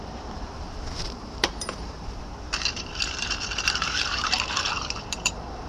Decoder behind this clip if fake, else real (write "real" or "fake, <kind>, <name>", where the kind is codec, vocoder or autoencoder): fake, vocoder, BigVGAN v2